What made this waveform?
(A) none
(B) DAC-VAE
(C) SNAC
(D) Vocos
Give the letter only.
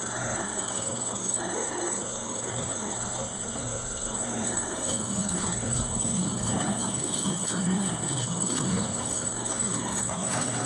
C